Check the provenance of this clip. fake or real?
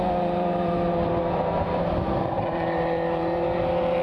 fake